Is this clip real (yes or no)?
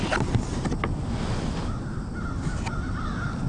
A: yes